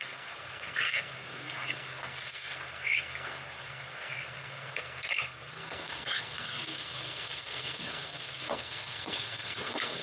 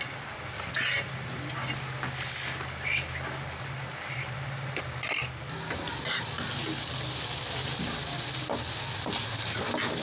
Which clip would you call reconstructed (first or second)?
first